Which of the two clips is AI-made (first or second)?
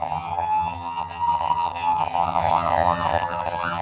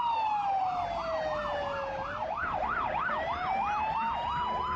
first